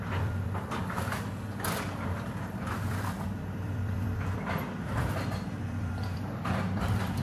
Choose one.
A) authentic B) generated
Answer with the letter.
B